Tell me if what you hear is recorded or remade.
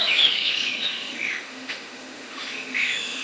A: remade